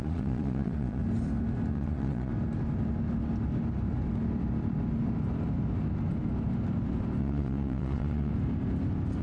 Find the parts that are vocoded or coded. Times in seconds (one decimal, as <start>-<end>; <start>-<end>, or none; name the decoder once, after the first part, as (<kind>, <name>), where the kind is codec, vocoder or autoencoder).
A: 0.0-1.0 (vocoder, Vocos); 1.7-2.3; 7.2-8.3